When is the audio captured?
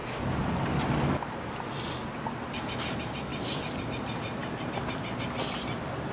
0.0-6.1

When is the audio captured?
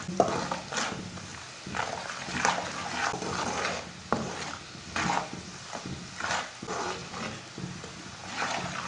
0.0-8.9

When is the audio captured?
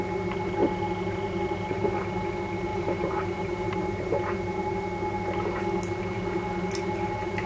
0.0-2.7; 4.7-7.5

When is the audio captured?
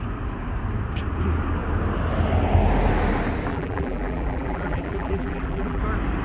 0.0-3.5; 5.8-6.2